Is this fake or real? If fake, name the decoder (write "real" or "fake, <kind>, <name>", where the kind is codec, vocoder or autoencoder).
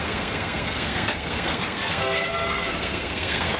fake, codec, SNAC